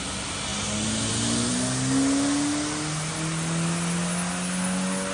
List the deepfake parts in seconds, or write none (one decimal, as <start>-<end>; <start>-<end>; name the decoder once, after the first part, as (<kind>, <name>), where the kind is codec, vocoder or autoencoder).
none